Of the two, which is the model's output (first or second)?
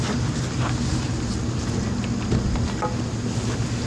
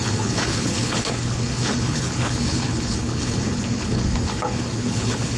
second